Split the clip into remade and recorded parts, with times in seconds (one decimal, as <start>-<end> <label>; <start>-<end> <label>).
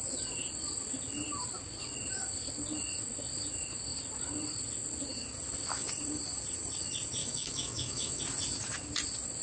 0.0-7.2 recorded; 7.2-8.2 remade; 8.2-9.4 recorded